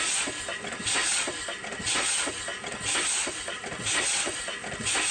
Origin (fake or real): real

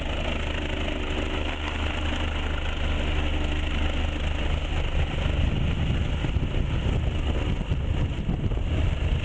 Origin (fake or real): real